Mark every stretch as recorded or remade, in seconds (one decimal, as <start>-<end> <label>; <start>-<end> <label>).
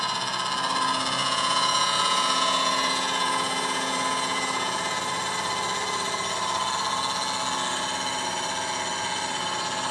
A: 0.0-1.2 recorded; 1.2-5.0 remade; 5.0-9.9 recorded